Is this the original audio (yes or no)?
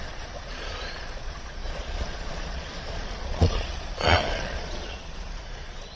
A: no